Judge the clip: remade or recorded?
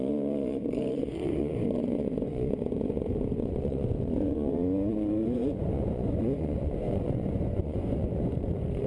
remade